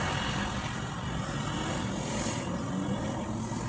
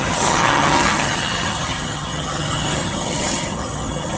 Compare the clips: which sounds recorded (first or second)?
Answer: first